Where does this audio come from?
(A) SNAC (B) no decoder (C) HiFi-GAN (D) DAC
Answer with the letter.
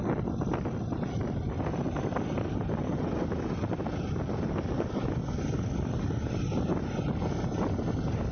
B